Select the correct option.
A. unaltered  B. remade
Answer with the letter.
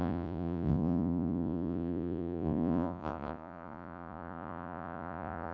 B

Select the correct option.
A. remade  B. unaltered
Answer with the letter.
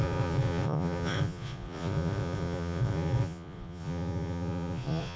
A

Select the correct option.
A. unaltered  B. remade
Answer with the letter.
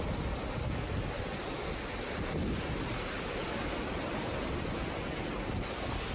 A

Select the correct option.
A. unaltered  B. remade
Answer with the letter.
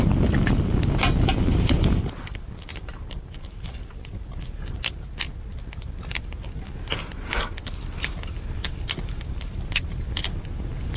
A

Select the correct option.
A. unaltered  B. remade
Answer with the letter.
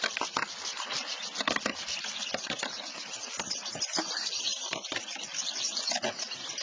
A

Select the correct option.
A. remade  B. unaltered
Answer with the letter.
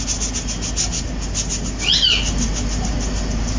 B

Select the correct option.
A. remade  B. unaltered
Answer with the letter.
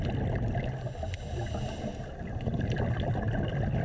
B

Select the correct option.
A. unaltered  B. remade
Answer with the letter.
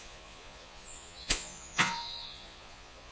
B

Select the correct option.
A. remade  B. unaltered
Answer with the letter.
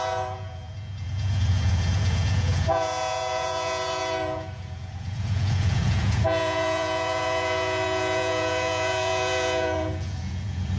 A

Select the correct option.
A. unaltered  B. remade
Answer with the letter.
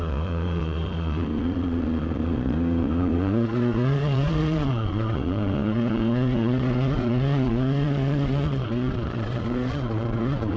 B